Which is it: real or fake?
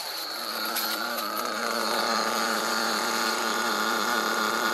fake